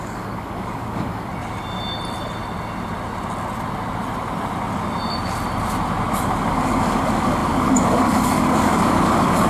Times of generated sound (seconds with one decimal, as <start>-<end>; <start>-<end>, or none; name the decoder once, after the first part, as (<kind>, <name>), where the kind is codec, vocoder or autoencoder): 0.0-1.3 (codec, DAC); 6.5-9.5